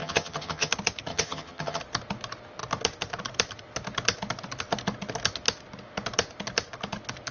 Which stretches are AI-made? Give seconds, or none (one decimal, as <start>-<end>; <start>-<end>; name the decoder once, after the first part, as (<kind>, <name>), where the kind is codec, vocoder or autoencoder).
0.0-0.7 (vocoder, HiFi-GAN); 1.1-1.8